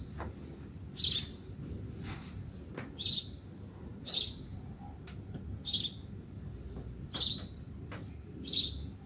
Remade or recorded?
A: recorded